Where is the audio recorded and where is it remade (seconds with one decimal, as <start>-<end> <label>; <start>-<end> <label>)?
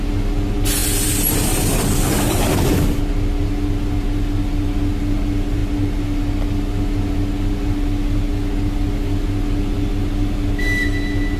0.0-0.8 recorded; 0.8-3.0 remade; 3.0-11.4 recorded